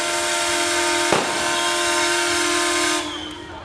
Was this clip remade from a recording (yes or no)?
no